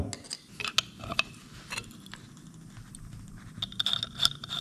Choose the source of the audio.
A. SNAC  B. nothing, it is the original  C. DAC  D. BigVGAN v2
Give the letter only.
B